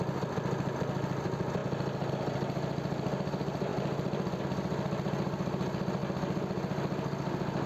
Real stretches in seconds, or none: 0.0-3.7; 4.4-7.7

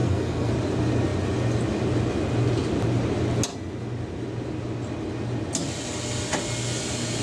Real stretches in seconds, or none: 0.5-7.2

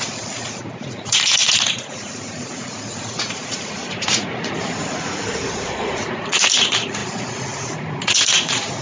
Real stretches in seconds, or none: none